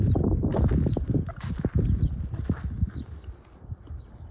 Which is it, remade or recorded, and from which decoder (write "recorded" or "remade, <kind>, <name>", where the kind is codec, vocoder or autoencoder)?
recorded